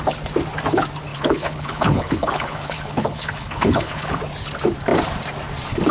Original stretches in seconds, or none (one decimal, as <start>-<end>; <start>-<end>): 0.0-1.1; 4.2-5.9